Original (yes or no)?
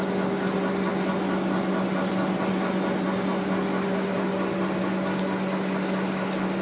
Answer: yes